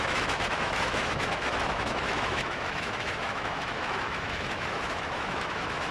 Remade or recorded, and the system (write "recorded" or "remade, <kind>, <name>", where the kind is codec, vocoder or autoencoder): remade, autoencoder, DAC-VAE